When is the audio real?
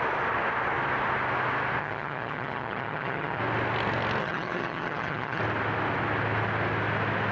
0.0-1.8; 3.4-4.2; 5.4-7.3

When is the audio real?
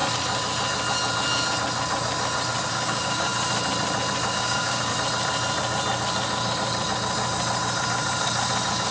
0.0-2.7; 3.3-4.3; 4.9-8.9